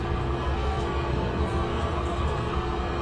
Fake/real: fake